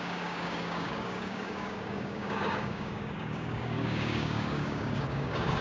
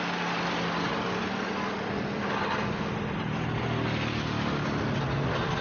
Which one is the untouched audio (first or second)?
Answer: second